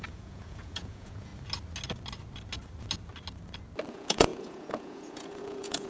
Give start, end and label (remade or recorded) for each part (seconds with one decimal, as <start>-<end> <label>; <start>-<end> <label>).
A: 0.0-1.3 remade; 1.3-3.9 recorded; 3.9-5.9 remade